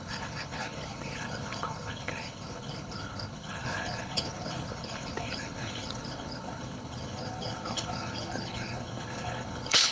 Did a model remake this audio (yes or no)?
yes